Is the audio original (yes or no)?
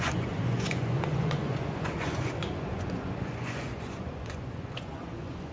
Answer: no